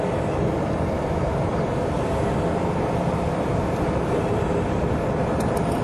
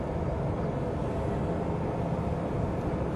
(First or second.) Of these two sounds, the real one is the second